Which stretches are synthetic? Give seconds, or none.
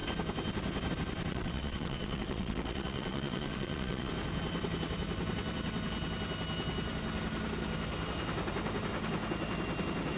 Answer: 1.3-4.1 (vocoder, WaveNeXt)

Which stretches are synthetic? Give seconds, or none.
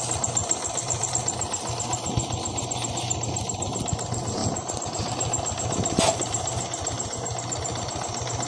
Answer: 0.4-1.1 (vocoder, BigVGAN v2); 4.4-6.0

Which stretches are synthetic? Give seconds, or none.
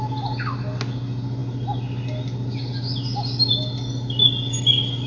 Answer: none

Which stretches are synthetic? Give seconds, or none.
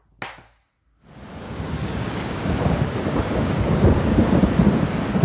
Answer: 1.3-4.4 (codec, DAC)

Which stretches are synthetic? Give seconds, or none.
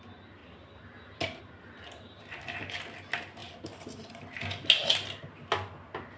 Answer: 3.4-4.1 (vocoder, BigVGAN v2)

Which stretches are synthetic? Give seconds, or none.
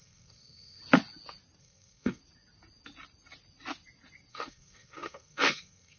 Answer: 0.0-0.8 (codec, SNAC); 1.6-2.2; 4.3-6.0